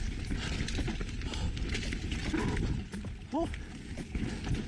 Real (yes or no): yes